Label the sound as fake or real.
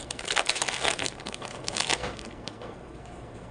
fake